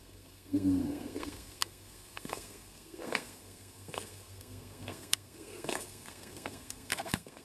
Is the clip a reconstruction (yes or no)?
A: yes